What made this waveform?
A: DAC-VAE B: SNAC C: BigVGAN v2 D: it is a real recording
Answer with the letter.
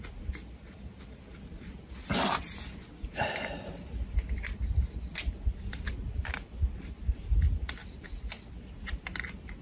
D